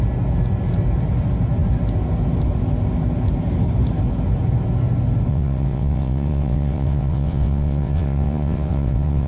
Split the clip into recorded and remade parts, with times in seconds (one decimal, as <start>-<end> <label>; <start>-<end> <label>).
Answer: 0.0-5.3 recorded; 5.3-9.3 remade